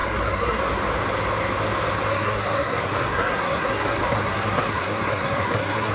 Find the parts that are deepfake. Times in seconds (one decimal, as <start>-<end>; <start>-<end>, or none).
0.0-0.6; 2.1-5.9